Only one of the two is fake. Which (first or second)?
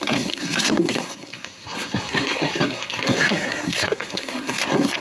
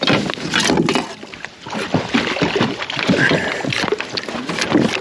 first